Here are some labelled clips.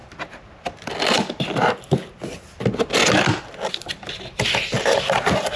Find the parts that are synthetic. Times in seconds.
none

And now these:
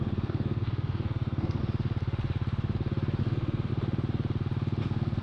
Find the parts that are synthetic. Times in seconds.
0.0-1.6 (codec, SNAC); 3.2-3.7; 4.8-5.2

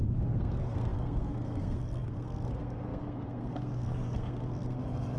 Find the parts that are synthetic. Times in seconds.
0.0-5.2 (codec, SNAC)

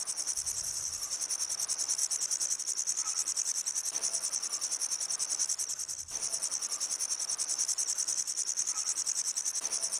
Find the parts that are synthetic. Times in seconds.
none

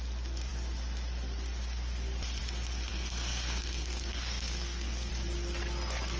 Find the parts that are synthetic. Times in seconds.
2.9-5.1 (codec, SNAC)

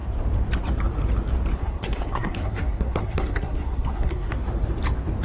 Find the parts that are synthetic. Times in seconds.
1.6-4.3 (codec, SNAC)